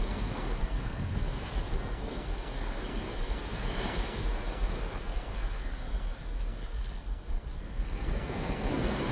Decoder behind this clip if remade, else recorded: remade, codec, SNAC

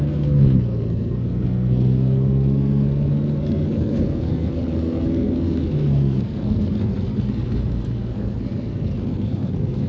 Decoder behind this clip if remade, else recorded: remade, codec, SNAC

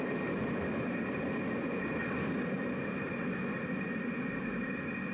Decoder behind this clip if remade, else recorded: recorded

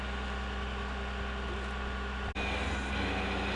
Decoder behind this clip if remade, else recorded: recorded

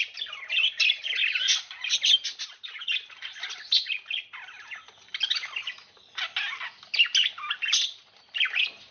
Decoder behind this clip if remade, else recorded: recorded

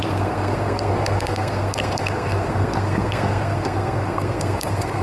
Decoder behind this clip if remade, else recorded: remade, codec, SNAC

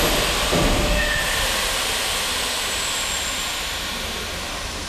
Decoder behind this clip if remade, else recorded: recorded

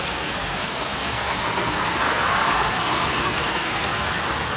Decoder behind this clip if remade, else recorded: remade, codec, SNAC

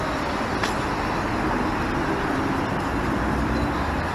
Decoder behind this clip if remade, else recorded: recorded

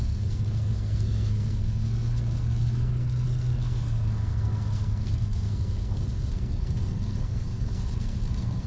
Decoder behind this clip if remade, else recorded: remade, codec, SNAC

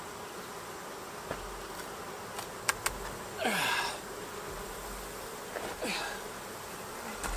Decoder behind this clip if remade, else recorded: recorded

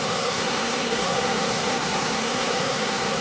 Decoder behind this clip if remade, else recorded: remade, codec, SNAC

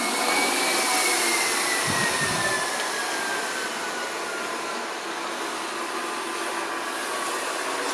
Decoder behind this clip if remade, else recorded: recorded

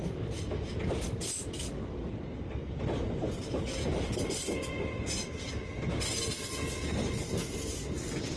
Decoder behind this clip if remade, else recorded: recorded